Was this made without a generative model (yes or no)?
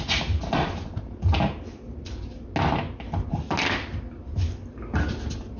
yes